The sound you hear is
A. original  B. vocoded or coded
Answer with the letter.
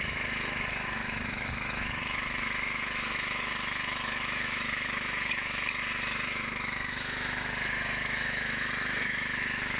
B